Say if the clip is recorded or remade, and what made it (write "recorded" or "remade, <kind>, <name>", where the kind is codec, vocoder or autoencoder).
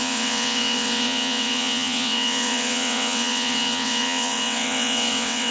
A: remade, vocoder, WaveNeXt